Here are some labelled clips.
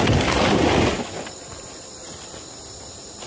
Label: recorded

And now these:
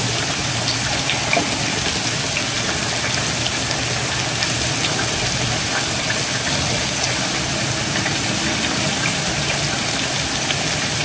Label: recorded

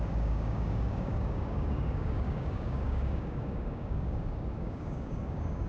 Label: remade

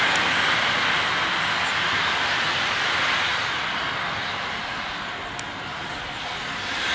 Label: recorded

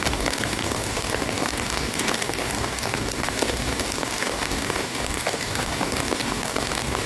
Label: remade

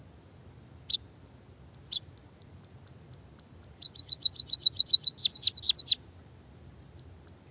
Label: recorded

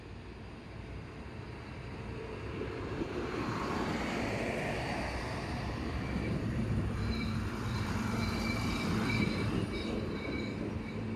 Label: recorded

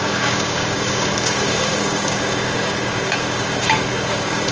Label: remade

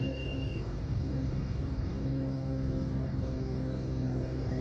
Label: remade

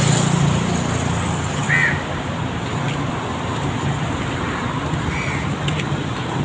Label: recorded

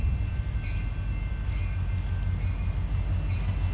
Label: recorded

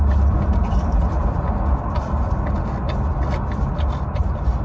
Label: recorded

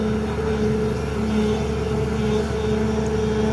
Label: recorded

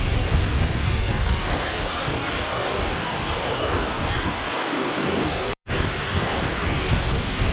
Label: remade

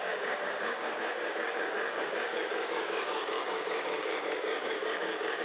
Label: remade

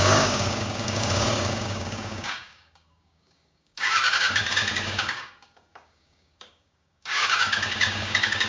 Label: remade